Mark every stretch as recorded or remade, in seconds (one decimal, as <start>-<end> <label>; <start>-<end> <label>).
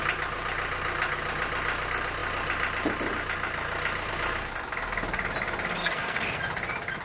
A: 0.0-5.8 recorded; 5.8-6.4 remade; 6.4-7.0 recorded